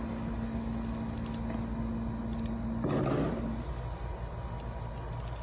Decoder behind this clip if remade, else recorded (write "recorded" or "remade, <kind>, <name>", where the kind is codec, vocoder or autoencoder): recorded